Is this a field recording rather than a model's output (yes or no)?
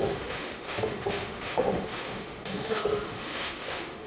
no